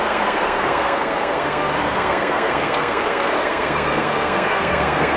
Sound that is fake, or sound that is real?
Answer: fake